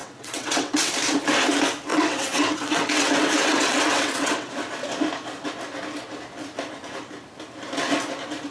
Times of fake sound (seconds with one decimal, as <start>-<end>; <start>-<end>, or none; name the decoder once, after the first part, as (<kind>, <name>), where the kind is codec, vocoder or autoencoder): 0.0-0.9 (vocoder, WaveNeXt); 1.9-4.5